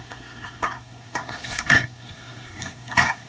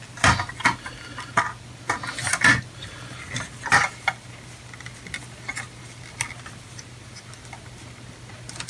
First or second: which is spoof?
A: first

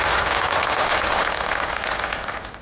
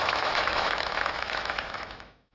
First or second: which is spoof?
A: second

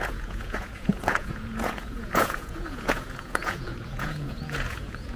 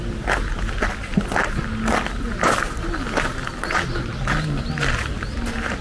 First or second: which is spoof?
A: first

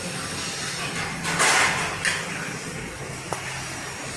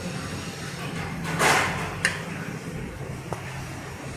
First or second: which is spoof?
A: second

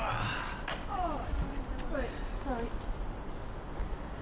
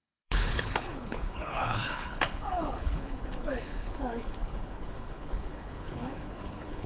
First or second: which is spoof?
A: second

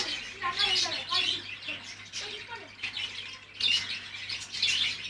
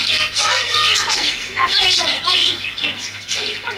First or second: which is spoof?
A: second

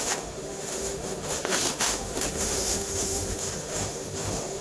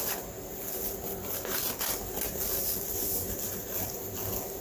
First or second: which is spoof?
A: first